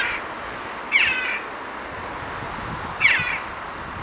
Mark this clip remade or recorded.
recorded